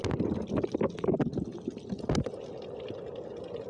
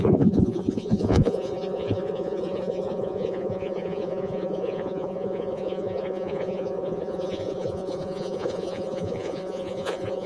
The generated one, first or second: second